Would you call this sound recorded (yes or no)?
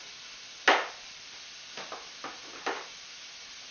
yes